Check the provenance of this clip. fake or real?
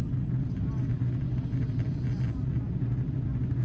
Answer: real